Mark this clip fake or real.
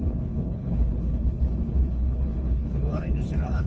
fake